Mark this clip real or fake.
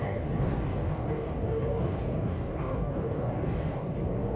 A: fake